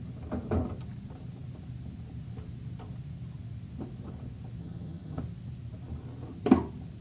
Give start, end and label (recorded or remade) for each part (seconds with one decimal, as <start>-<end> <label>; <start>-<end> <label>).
0.0-4.6 recorded; 4.6-5.2 remade; 5.2-7.0 recorded